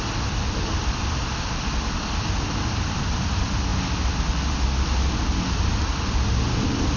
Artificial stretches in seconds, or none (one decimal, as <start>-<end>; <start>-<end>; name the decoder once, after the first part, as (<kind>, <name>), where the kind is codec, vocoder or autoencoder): none